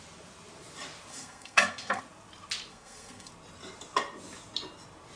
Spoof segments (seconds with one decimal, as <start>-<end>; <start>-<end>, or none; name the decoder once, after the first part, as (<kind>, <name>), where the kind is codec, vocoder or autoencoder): 1.1-2.0 (codec, SNAC); 2.7-3.3